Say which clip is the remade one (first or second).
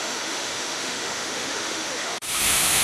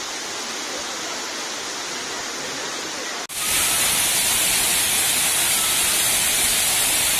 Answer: first